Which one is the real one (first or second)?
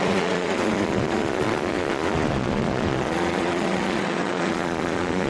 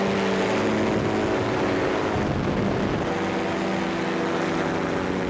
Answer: second